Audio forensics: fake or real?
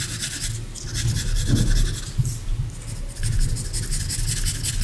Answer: real